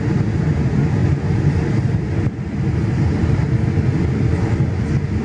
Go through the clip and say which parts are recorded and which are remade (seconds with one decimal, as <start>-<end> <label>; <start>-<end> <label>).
0.0-1.0 recorded; 1.0-3.5 remade; 3.5-5.2 recorded